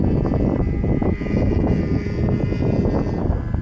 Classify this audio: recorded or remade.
recorded